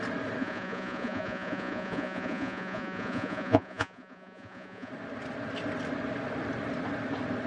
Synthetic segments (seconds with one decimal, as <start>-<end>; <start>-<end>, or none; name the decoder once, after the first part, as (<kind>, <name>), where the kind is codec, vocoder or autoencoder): 0.4-4.9 (vocoder, Vocos)